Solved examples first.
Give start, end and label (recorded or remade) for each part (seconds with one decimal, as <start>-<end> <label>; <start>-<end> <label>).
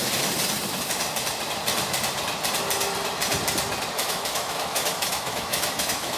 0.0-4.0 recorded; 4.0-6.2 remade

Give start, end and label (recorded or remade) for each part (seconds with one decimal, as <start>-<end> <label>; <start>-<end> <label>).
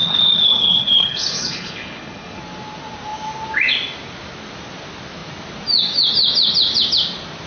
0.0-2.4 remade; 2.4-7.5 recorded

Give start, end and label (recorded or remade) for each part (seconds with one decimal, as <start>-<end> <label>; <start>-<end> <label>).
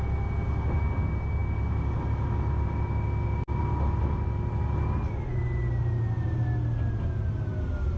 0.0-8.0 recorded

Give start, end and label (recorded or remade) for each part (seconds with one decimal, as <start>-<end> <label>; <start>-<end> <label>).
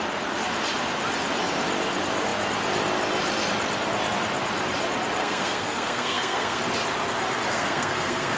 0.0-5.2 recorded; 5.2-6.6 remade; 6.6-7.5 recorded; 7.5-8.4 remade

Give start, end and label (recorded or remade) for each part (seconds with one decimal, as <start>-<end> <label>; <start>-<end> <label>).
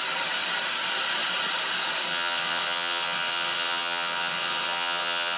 0.0-2.1 recorded; 2.1-5.4 remade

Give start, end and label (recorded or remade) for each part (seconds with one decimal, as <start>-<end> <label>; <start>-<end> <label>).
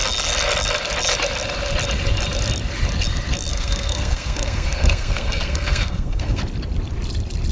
0.0-3.5 recorded; 3.5-6.4 remade; 6.4-7.5 recorded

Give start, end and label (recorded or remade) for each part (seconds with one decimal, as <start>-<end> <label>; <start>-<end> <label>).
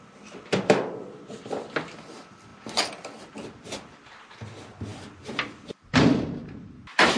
0.0-2.5 recorded; 2.5-4.4 remade; 4.4-4.9 recorded; 4.9-6.8 remade; 6.8-7.2 recorded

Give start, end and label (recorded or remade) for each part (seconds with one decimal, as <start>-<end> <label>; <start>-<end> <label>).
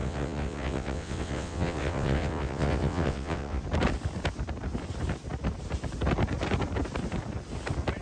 0.0-3.6 remade; 3.6-8.0 recorded